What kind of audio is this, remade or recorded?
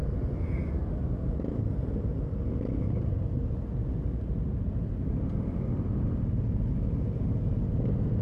recorded